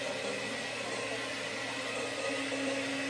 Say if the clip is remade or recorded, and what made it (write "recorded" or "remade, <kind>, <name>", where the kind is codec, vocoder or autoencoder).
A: recorded